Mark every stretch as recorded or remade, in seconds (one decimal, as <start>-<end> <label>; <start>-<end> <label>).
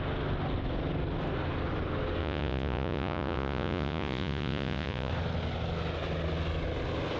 0.0-2.2 recorded; 2.2-5.1 remade; 5.1-7.2 recorded